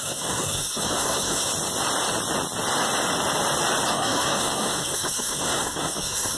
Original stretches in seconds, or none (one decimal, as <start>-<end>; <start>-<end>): 1.5-3.9